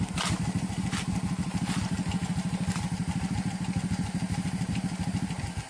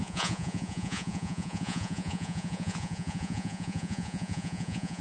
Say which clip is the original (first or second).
first